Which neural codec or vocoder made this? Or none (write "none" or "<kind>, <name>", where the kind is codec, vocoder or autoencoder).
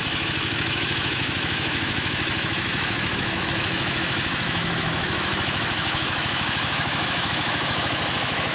autoencoder, DAC-VAE